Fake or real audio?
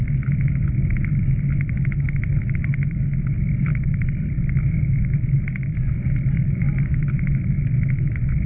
real